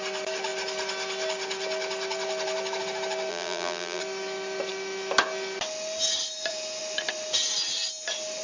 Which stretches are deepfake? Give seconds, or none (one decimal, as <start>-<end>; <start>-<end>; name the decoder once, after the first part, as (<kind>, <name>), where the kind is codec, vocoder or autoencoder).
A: 3.3-4.0 (vocoder, BigVGAN v2)